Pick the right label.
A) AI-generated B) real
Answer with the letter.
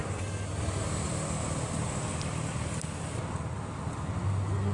B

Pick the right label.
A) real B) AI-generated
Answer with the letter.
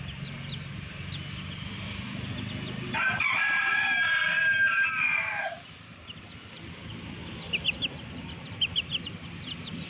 A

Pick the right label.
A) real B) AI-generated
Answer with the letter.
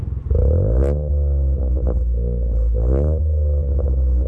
A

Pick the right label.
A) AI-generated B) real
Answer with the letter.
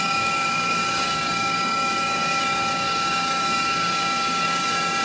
A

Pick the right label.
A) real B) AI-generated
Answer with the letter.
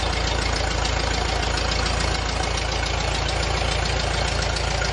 A